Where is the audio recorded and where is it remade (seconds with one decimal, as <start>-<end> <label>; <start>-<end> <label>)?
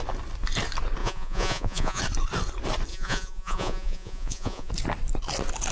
0.0-1.0 recorded; 1.0-2.0 remade; 2.0-2.9 recorded; 2.9-4.7 remade; 4.7-5.7 recorded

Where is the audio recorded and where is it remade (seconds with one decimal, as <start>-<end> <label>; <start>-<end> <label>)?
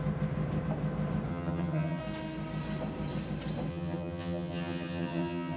0.0-1.3 recorded; 1.3-2.0 remade; 2.0-3.7 recorded; 3.7-5.6 remade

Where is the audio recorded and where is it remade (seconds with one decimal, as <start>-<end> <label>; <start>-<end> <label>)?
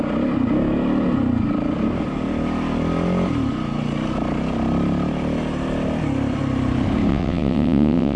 0.0-7.1 recorded; 7.1-8.2 remade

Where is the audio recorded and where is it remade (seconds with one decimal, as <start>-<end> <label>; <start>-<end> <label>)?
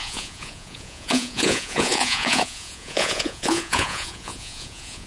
0.0-5.1 remade